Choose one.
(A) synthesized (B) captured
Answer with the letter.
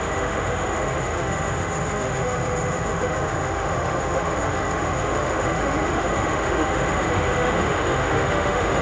A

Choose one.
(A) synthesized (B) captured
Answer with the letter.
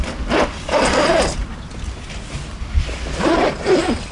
B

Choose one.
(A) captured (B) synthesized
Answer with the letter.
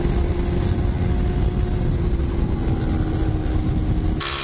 A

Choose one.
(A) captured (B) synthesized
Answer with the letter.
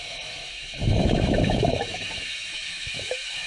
B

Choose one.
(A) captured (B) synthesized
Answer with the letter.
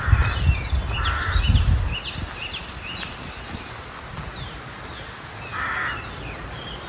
A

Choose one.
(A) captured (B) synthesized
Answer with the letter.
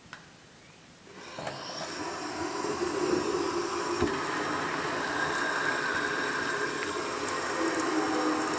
A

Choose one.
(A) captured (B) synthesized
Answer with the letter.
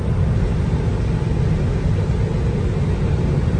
A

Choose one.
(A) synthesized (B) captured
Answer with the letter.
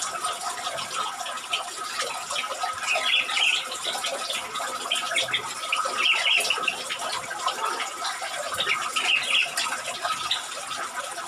B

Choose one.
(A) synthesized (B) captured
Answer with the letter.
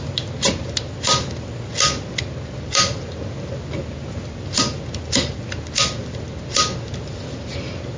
B